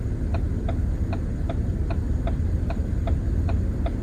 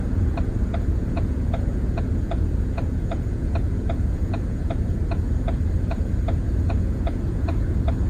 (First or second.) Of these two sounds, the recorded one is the first